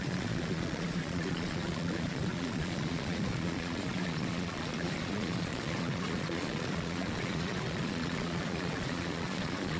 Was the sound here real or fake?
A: fake